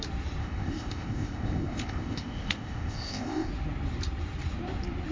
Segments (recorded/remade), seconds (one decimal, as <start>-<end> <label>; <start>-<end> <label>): 0.0-0.4 recorded; 0.4-3.5 remade; 3.5-5.1 recorded